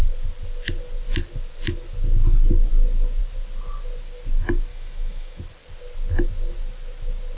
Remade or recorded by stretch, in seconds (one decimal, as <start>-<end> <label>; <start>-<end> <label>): 0.0-4.7 recorded; 4.7-5.4 remade; 5.4-7.4 recorded

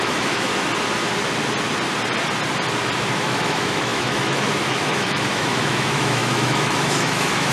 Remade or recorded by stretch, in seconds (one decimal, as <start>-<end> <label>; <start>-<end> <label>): 0.0-0.5 remade; 0.5-3.2 recorded; 3.2-7.5 remade

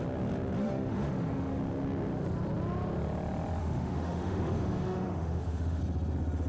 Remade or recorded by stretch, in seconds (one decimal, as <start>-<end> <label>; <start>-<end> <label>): 0.0-0.6 recorded; 0.6-1.6 remade; 1.6-3.6 recorded; 3.6-5.8 remade; 5.8-6.5 recorded